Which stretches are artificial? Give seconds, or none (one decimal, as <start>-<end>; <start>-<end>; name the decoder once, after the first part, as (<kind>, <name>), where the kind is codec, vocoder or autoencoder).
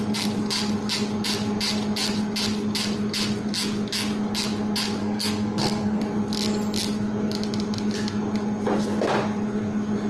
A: 5.0-6.0 (codec, SNAC)